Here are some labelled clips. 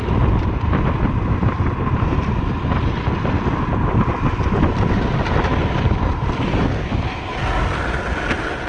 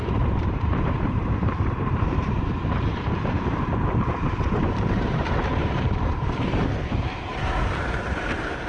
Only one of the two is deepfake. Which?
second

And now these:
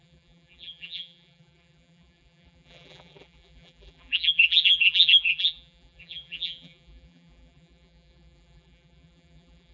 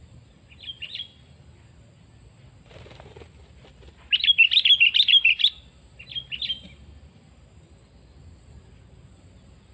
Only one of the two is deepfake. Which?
first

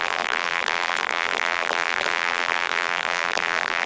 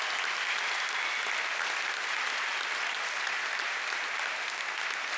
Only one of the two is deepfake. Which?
first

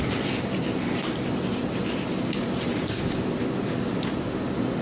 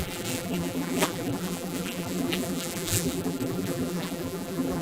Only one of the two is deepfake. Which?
second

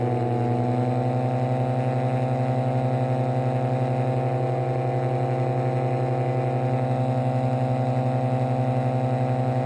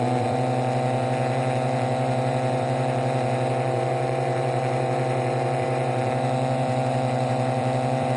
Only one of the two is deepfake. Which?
second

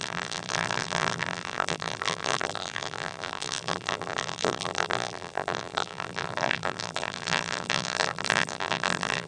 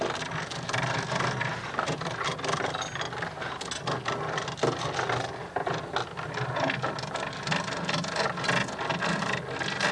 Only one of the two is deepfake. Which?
first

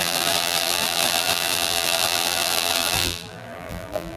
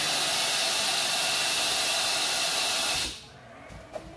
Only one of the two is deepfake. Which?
first